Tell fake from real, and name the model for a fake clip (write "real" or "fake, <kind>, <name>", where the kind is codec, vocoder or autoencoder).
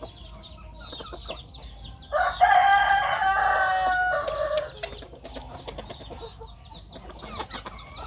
real